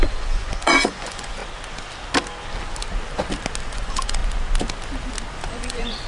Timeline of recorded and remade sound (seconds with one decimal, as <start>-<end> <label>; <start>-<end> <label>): 0.0-1.4 remade; 1.4-3.7 recorded; 3.7-4.2 remade; 4.2-5.5 recorded; 5.5-6.1 remade

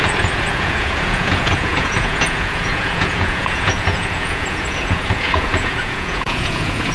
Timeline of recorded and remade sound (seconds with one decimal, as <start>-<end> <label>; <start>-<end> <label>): 0.0-6.9 remade

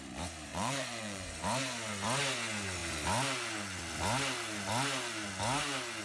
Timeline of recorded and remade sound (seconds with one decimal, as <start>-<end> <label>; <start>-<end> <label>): 0.0-0.5 recorded; 0.5-1.3 remade; 1.3-6.0 recorded

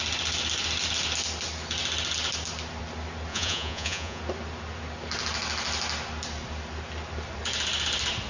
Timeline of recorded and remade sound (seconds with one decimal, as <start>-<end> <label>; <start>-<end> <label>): 0.0-3.3 recorded; 3.3-4.2 remade; 4.2-8.3 recorded